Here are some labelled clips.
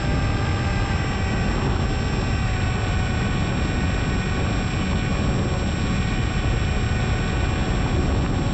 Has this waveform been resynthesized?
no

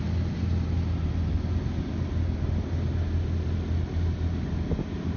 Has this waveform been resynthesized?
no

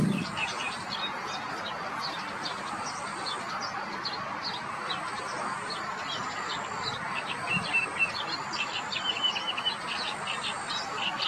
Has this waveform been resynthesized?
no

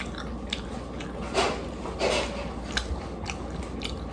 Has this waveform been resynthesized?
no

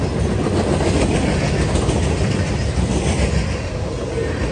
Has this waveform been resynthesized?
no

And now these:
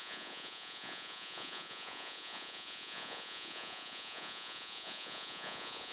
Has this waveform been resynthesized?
yes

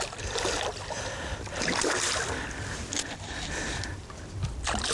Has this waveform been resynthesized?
no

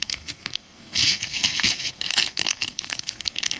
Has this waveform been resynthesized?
yes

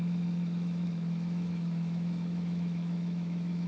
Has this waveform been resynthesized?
yes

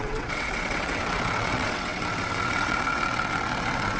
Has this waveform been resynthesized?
yes